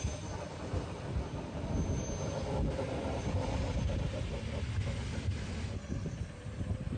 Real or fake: real